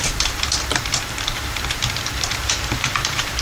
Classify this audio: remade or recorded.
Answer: remade